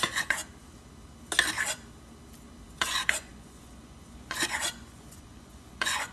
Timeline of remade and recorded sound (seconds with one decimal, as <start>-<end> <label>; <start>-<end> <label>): 0.0-0.4 remade; 0.4-2.8 recorded; 2.8-6.1 remade